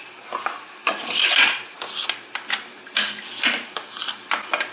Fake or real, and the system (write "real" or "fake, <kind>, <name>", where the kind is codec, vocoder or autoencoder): real